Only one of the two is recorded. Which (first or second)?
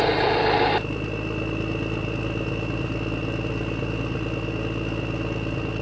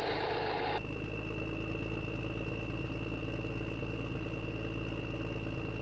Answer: first